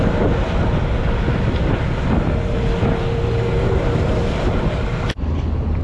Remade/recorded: recorded